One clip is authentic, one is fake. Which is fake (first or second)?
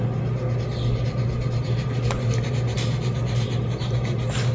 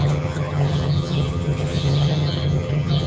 second